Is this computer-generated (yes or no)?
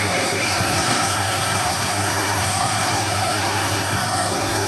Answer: yes